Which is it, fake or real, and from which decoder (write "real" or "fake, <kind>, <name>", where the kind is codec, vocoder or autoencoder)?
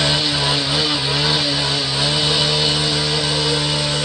real